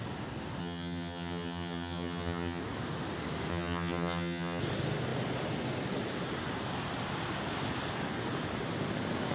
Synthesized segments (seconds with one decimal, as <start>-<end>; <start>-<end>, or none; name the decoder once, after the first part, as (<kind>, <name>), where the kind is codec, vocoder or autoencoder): 0.6-2.6 (vocoder, HiFi-GAN); 3.5-4.6